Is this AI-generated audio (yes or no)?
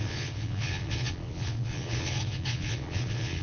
yes